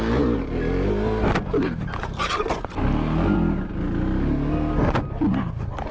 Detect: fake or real real